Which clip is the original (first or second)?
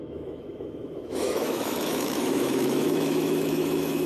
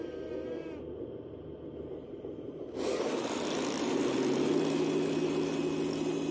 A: second